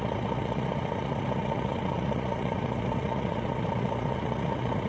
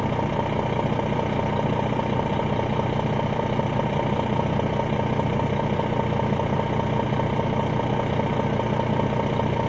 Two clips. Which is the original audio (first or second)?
second